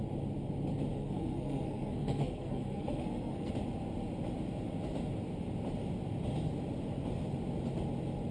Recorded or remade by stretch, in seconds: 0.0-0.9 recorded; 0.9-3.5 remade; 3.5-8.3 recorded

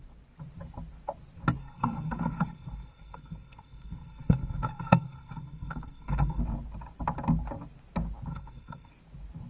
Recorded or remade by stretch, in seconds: 0.0-1.6 recorded; 1.6-6.4 remade; 6.4-8.3 recorded; 8.3-8.9 remade; 8.9-9.5 recorded

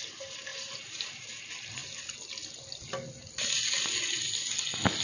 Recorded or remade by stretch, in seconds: 0.0-0.5 recorded; 0.5-1.4 remade; 1.4-5.0 recorded

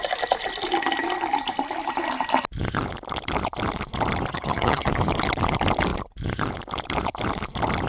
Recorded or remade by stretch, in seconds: 0.0-4.3 recorded; 4.3-4.9 remade; 4.9-7.9 recorded

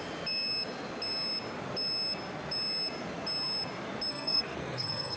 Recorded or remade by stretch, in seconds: 0.0-4.1 recorded; 4.1-5.2 remade

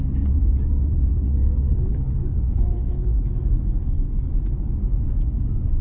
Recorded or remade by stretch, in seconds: 0.0-1.1 recorded; 1.1-3.3 remade; 3.3-5.8 recorded

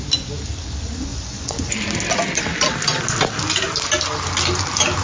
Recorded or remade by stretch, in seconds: 0.0-1.1 recorded; 1.1-1.7 remade; 1.7-5.0 recorded

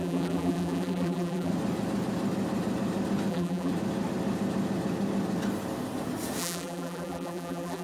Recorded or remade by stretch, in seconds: 0.0-1.5 remade; 1.5-3.3 recorded; 3.3-3.7 remade; 3.7-6.4 recorded; 6.4-7.8 remade